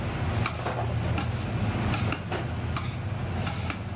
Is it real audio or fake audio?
real